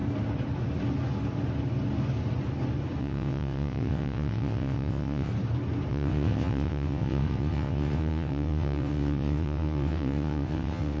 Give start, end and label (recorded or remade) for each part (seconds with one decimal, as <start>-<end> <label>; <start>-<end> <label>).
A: 0.0-3.0 recorded; 3.0-5.3 remade; 5.3-5.9 recorded; 5.9-11.0 remade